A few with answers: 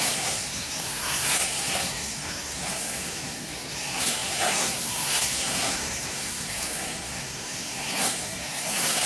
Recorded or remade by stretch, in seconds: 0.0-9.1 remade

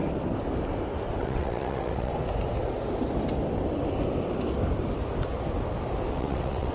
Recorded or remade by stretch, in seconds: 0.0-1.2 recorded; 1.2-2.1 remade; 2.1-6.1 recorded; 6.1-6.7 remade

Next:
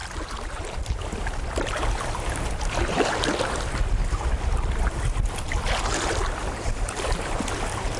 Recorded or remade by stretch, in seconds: 0.0-8.0 recorded